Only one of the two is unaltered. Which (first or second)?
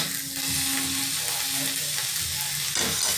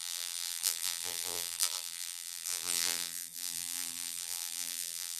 first